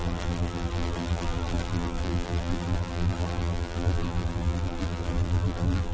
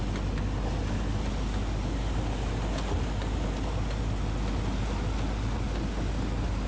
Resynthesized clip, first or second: first